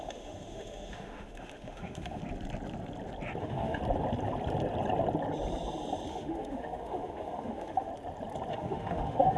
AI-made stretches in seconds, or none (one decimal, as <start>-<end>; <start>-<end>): 0.0-2.2; 3.4-3.8; 6.1-7.9; 8.5-9.4